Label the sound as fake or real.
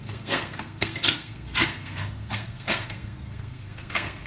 fake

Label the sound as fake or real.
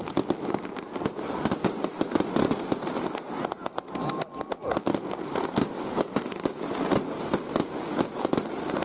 real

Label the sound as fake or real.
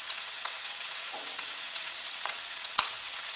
fake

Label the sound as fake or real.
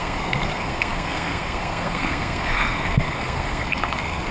fake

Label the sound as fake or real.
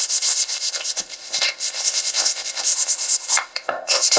fake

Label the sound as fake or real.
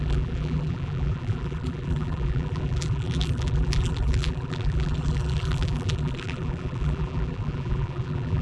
fake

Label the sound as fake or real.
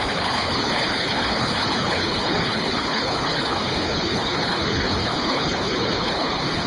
fake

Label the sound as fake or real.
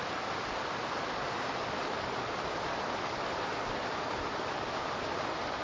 real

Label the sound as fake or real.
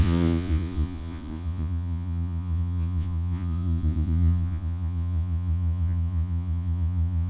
fake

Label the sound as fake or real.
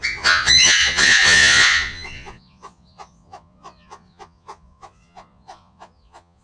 fake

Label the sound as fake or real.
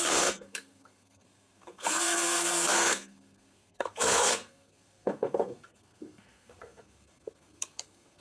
fake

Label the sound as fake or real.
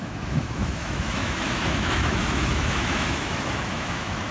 fake